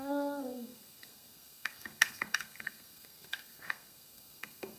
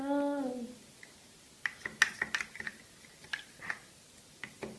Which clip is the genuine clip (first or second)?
second